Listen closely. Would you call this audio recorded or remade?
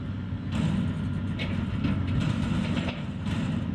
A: recorded